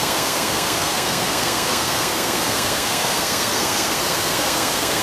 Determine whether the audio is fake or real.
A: fake